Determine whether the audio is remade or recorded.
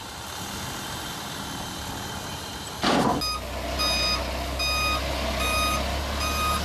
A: recorded